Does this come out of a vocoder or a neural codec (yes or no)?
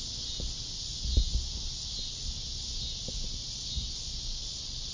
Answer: no